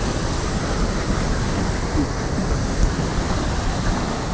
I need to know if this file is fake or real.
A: real